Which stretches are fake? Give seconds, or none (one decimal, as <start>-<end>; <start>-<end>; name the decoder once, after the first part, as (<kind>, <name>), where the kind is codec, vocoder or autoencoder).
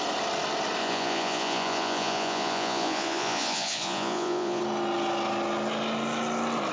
0.8-4.6 (vocoder, Vocos)